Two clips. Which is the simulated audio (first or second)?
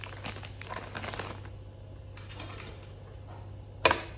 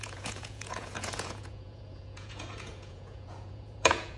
second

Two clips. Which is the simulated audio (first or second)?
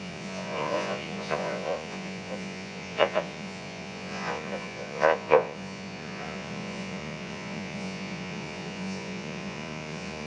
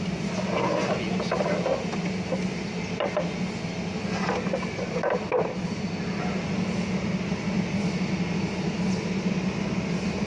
first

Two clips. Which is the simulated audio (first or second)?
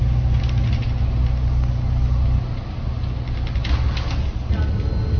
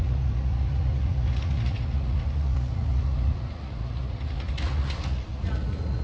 second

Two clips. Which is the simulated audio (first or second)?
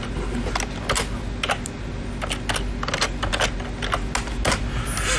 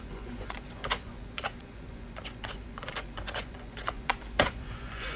second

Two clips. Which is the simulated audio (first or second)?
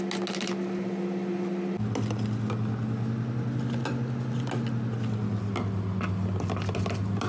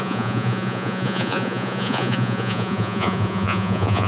second